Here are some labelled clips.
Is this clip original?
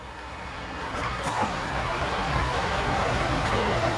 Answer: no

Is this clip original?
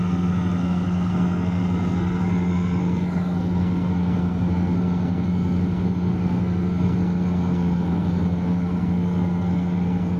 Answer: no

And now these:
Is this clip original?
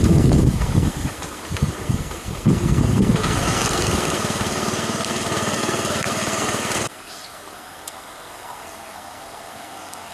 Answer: no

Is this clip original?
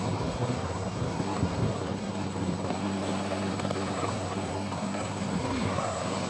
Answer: no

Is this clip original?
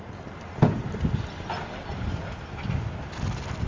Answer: yes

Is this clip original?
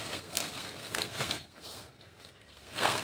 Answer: no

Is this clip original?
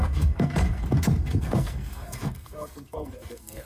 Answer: no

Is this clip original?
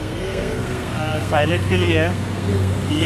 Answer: no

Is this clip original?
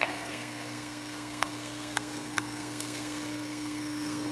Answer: no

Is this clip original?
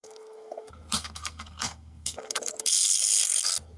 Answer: no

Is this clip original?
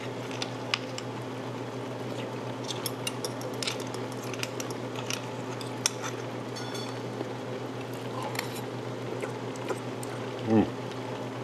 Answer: yes